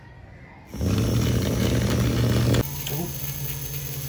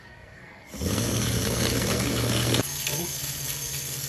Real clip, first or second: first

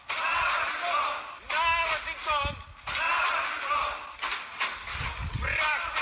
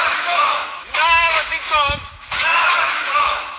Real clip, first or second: first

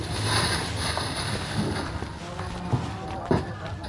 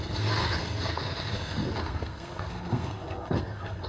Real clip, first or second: first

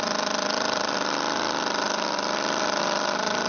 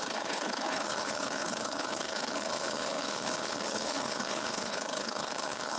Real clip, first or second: first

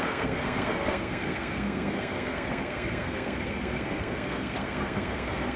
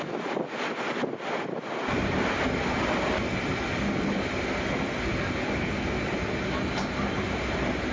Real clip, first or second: second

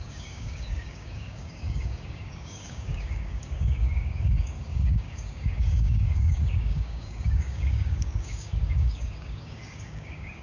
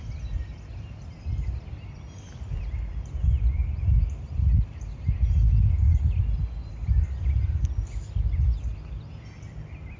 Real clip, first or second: second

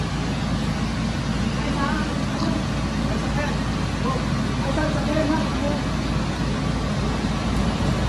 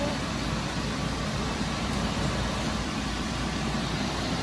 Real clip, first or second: first